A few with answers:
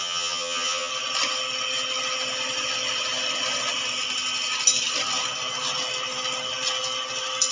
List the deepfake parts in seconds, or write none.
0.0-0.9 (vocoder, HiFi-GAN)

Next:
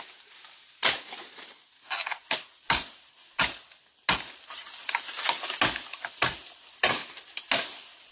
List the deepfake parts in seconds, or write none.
none